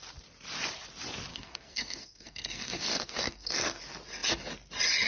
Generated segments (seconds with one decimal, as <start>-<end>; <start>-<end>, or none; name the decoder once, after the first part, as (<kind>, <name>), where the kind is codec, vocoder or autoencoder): 1.3-3.8 (codec, SNAC)